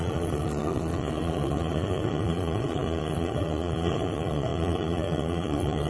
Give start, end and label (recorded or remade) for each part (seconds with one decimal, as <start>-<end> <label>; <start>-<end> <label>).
0.0-5.9 remade